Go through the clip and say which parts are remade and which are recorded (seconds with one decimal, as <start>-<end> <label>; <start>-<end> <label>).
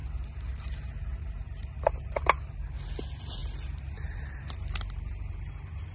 0.0-2.4 remade; 2.4-3.4 recorded; 3.4-5.9 remade